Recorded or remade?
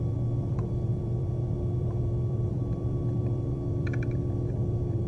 remade